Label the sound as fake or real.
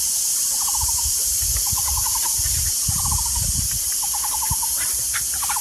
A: real